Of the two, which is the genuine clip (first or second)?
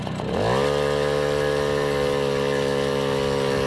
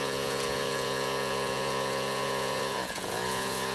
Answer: first